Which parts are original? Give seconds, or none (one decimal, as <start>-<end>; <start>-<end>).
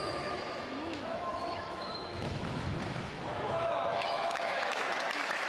none